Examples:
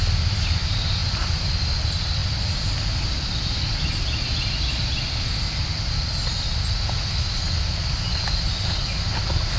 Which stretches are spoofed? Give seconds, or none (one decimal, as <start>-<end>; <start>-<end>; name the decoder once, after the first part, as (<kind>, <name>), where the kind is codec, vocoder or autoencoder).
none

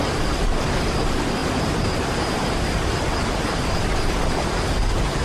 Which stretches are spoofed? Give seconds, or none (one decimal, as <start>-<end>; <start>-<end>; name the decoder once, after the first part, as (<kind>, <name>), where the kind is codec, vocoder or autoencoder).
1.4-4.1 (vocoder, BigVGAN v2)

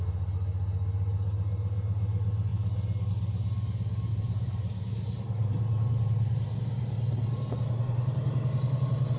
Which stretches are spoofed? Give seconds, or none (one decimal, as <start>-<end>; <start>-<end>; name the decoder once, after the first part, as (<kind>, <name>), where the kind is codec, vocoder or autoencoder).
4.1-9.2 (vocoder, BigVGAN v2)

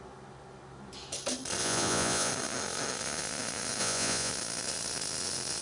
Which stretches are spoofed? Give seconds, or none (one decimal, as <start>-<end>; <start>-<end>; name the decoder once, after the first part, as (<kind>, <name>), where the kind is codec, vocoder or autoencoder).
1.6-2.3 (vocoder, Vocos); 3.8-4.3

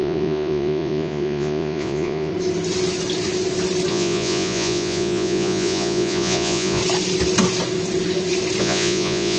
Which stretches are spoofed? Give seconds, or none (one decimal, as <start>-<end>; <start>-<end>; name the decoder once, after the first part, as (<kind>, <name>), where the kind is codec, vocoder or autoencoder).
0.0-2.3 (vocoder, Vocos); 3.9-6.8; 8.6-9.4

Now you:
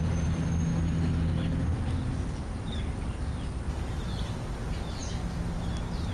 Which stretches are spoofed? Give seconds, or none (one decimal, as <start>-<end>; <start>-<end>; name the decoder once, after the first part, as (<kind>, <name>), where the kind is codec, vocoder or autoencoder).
none